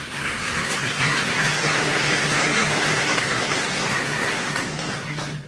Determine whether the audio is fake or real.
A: fake